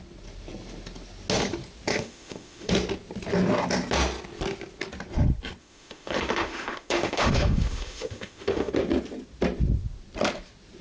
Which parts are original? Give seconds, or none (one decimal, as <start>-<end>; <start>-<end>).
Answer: 0.0-1.9; 2.7-5.6; 8.7-10.8